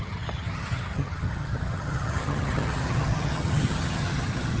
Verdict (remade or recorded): remade